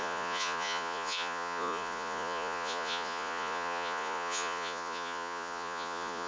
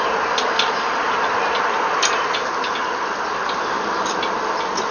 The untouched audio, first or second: second